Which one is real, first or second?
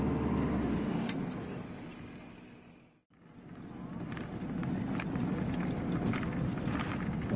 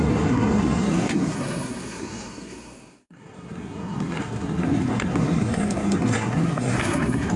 first